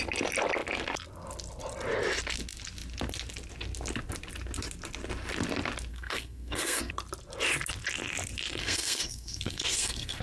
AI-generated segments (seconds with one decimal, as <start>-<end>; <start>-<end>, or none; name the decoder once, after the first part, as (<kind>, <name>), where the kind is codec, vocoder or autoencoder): 5.9-6.9 (codec, SNAC); 8.6-10.2